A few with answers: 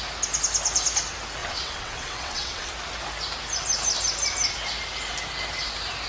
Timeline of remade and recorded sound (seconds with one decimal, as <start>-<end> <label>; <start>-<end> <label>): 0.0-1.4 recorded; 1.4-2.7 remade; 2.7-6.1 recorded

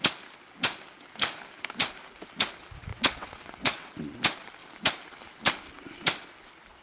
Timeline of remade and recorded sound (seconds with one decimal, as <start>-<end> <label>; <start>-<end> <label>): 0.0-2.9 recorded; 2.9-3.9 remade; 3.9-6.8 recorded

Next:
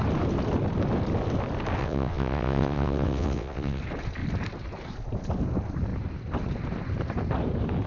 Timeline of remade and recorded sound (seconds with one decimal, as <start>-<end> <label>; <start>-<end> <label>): 0.0-1.8 recorded; 1.8-3.8 remade; 3.8-7.9 recorded

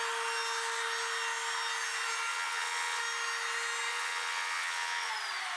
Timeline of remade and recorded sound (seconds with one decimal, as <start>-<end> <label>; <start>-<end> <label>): 0.0-2.3 recorded; 2.3-3.0 remade; 3.0-3.9 recorded; 3.9-5.1 remade; 5.1-5.6 recorded